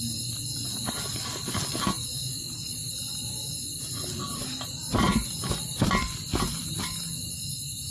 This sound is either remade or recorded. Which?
recorded